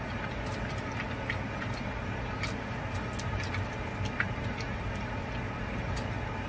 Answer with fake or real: real